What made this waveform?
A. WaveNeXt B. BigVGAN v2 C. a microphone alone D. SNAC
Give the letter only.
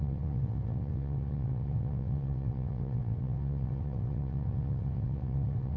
A